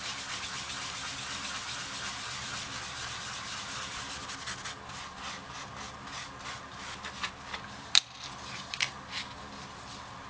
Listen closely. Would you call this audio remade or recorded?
recorded